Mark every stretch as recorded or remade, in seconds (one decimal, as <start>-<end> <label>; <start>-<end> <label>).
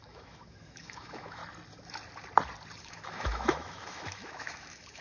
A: 0.0-1.4 remade; 1.4-2.8 recorded; 2.8-5.0 remade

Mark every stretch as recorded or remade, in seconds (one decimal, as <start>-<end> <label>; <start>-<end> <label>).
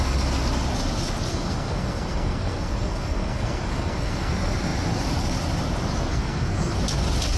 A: 0.0-1.3 recorded; 1.3-4.3 remade; 4.3-6.1 recorded; 6.1-6.8 remade; 6.8-7.4 recorded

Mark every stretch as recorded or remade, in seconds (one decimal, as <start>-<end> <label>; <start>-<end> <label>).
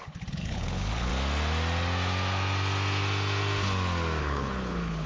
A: 0.0-1.1 remade; 1.1-4.2 recorded; 4.2-5.1 remade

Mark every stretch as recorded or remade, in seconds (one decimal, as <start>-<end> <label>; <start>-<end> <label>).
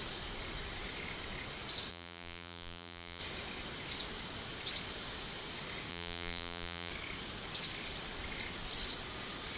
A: 0.0-1.9 recorded; 1.9-3.2 remade; 3.2-5.9 recorded; 5.9-6.9 remade; 6.9-9.6 recorded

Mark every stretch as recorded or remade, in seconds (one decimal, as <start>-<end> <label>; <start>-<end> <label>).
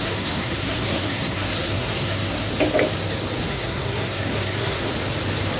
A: 0.0-2.5 remade; 2.5-3.5 recorded; 3.5-4.9 remade; 4.9-5.6 recorded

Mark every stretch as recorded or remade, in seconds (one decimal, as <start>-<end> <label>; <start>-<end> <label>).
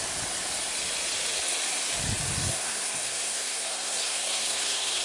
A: 0.0-2.4 recorded; 2.4-5.0 remade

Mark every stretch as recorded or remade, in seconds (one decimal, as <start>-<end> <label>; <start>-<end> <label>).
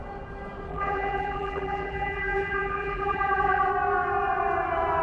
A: 0.0-0.7 recorded; 0.7-3.7 remade; 3.7-5.0 recorded